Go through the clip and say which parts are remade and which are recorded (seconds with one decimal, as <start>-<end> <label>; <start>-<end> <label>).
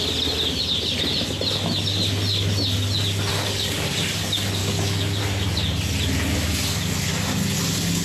0.0-3.3 recorded; 3.3-3.9 remade; 3.9-4.6 recorded; 4.6-5.2 remade; 5.2-8.0 recorded